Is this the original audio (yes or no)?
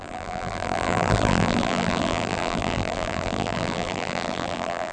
no